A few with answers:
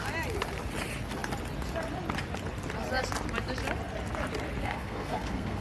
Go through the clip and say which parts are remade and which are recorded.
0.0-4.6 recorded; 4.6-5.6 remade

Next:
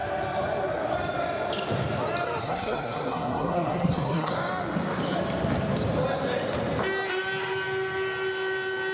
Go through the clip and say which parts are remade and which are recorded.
0.0-2.4 recorded; 2.4-4.3 remade; 4.3-8.9 recorded

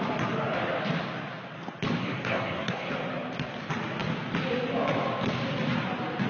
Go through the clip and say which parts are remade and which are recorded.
0.0-2.0 recorded; 2.0-2.9 remade; 2.9-6.3 recorded

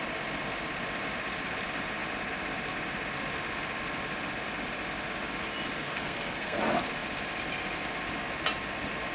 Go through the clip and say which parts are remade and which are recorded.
0.0-5.8 recorded; 5.8-6.6 remade; 6.6-9.1 recorded

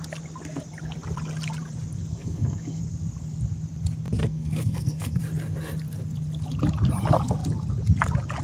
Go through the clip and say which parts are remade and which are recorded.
0.0-2.1 recorded; 2.1-2.8 remade; 2.8-4.2 recorded; 4.2-5.2 remade; 5.2-8.4 recorded

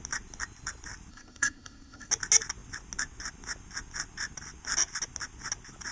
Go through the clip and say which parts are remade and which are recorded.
0.0-1.1 recorded; 1.1-2.1 remade; 2.1-5.9 recorded

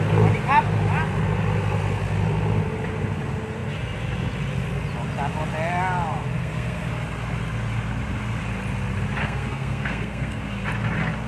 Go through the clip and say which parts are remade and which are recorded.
0.0-6.4 recorded; 6.4-6.9 remade; 6.9-9.2 recorded; 9.2-10.4 remade; 10.4-11.3 recorded

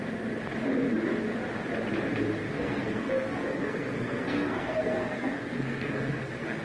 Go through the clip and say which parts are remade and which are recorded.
0.0-2.4 recorded; 2.4-6.6 remade